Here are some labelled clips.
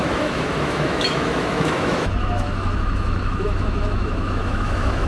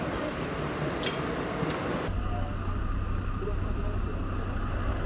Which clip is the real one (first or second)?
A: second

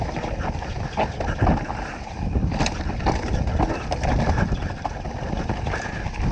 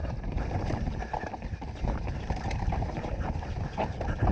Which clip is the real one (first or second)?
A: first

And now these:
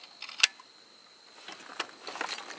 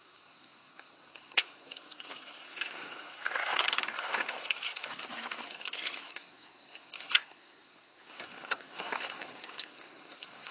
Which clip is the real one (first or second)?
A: first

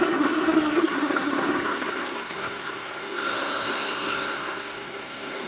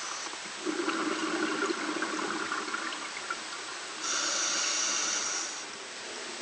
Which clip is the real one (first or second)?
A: second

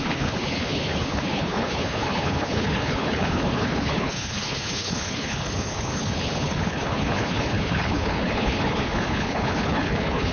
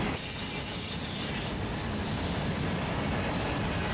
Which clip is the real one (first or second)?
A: second